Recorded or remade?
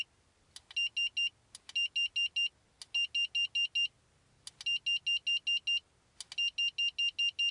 recorded